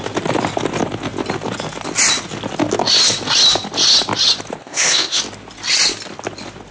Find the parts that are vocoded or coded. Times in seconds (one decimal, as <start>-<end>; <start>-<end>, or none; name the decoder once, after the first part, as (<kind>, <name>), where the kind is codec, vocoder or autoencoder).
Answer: 4.6-5.2 (codec, ZipCodec)